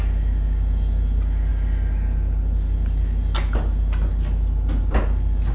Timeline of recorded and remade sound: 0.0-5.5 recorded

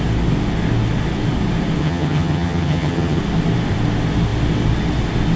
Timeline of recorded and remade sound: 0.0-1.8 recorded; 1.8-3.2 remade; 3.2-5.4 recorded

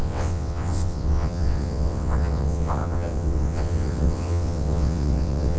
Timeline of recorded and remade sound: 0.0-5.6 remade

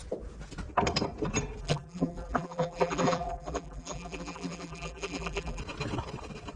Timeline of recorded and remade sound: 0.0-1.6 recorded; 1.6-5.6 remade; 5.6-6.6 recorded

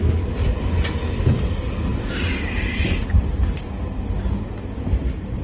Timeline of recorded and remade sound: 0.0-5.4 recorded